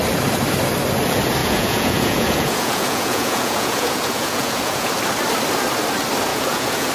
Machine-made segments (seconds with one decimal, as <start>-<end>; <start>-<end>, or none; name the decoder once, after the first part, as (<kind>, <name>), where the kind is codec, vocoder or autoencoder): 1.4-4.9 (vocoder, Vocos); 6.3-6.9